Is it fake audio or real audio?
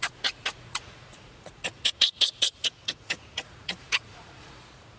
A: fake